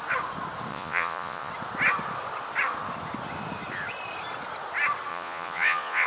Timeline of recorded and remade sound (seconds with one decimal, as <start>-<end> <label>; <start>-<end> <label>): 0.0-0.7 recorded; 0.7-1.5 remade; 1.5-5.1 recorded; 5.1-6.1 remade